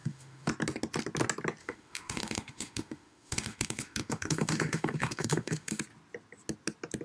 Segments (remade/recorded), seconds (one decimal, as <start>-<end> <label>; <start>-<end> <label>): 0.0-0.5 remade; 0.5-1.6 recorded; 1.6-5.8 remade; 5.8-7.0 recorded